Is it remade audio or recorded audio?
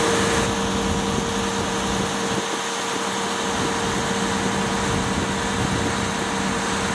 recorded